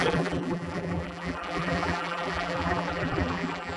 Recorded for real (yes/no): no